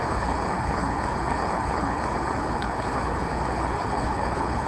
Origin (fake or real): fake